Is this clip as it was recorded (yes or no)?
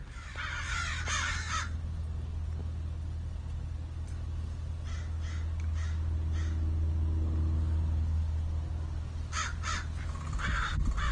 yes